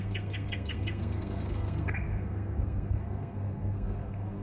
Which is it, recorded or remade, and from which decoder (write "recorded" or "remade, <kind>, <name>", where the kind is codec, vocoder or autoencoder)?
remade, codec, SNAC